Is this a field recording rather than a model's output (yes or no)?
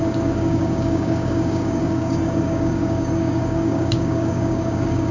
no